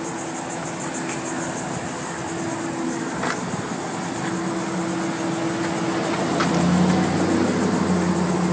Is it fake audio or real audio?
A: real